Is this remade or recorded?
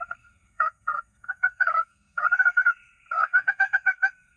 remade